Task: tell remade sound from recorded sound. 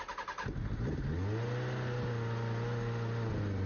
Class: recorded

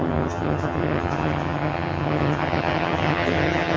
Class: remade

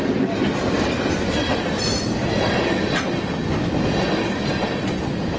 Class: recorded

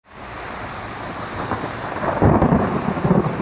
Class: recorded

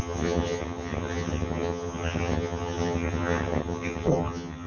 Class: remade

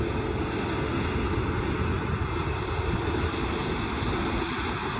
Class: recorded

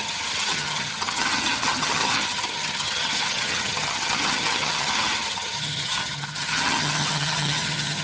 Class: remade